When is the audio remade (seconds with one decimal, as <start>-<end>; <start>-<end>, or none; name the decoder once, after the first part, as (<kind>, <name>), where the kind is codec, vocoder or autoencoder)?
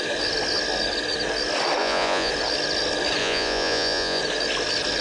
1.8-2.3 (vocoder, Vocos); 3.2-4.2